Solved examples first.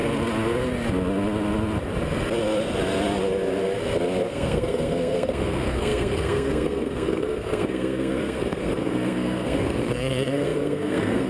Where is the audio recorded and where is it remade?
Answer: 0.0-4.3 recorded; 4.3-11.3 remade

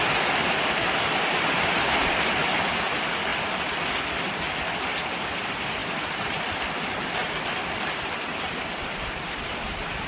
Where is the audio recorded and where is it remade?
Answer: 0.0-3.3 recorded; 3.3-4.1 remade; 4.1-5.8 recorded; 5.8-6.7 remade; 6.7-7.2 recorded; 7.2-8.8 remade; 8.8-10.1 recorded

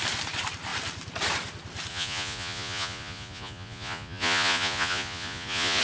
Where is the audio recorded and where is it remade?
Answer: 0.0-1.9 recorded; 1.9-5.8 remade

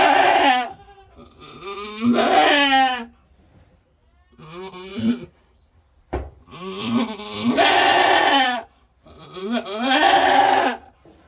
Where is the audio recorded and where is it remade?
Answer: 0.0-4.9 recorded; 4.9-9.4 remade; 9.4-11.3 recorded